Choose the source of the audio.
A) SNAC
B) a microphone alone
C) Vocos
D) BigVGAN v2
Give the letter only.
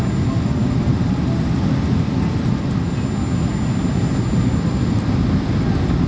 B